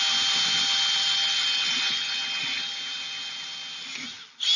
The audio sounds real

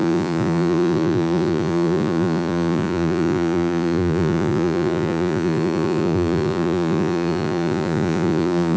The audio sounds fake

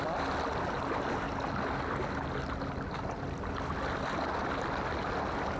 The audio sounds real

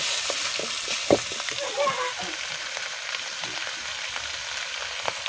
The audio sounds real